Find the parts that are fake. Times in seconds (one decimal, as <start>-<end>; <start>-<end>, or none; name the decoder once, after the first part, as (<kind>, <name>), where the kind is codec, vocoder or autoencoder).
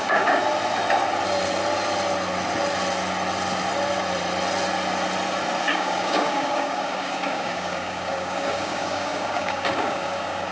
0.0-0.4 (codec, DAC); 5.6-10.5